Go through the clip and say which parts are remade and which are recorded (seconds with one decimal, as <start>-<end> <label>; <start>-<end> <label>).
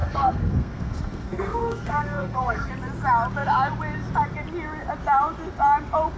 0.0-2.7 remade; 2.7-6.2 recorded